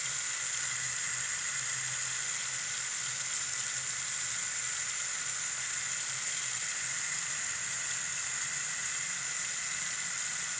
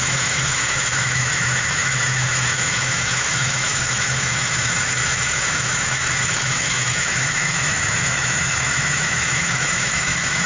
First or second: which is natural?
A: first